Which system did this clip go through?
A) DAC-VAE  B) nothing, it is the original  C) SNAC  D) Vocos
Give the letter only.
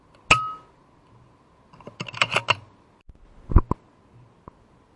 B